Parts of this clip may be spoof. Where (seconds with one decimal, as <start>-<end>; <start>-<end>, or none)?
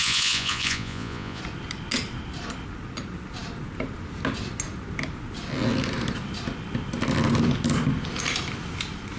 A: 0.0-1.4